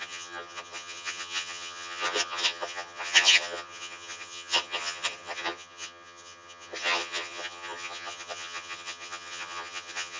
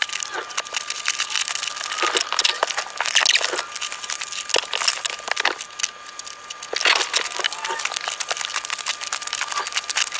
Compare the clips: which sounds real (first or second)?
second